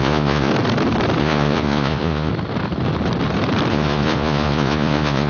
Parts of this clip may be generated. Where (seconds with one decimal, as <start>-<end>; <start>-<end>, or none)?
0.0-0.5; 1.2-2.3; 3.7-5.3